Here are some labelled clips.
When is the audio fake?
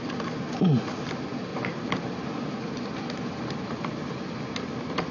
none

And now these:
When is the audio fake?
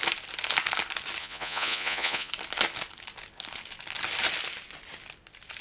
1.2-2.3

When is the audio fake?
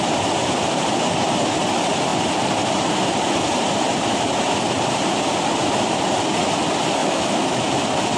7.0-7.7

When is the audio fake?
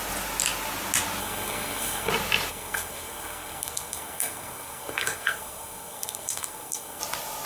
1.2-2.1; 2.5-7.0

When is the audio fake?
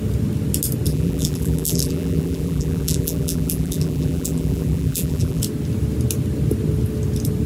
0.9-5.4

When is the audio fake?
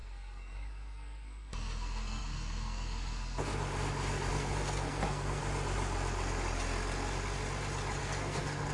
0.0-3.5; 4.3-5.4; 8.0-8.7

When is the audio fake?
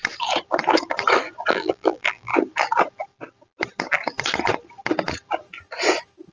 1.5-2.3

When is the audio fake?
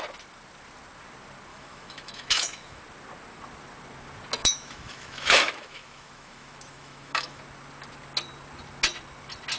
1.5-2.8; 4.4-7.4